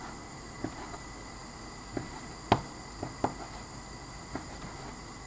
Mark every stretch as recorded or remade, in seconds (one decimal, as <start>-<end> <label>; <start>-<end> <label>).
0.0-5.3 recorded